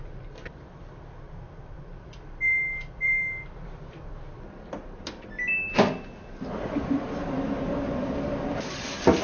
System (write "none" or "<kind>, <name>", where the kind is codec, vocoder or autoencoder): vocoder, BigVGAN v2